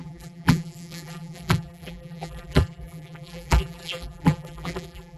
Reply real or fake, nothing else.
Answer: fake